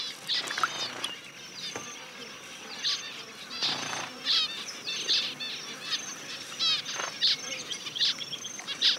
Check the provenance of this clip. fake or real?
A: real